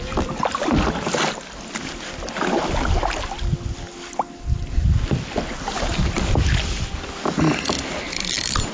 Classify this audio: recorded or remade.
recorded